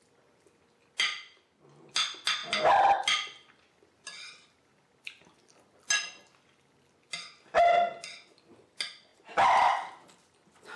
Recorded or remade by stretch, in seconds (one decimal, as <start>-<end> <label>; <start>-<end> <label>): 0.0-10.8 recorded